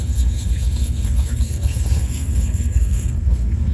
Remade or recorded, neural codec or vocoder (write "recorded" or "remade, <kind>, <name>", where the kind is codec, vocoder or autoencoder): remade, codec, SNAC